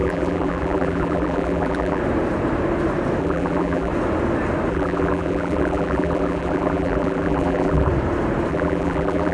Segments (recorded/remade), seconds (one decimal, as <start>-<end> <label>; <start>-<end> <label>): 0.0-2.0 remade; 2.0-3.2 recorded; 3.2-3.9 remade; 3.9-4.7 recorded; 4.7-7.9 remade; 7.9-8.5 recorded; 8.5-9.3 remade